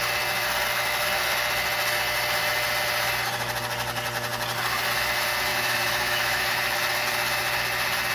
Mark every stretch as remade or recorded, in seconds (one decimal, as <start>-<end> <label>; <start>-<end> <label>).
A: 0.0-5.5 recorded; 5.5-6.5 remade; 6.5-8.1 recorded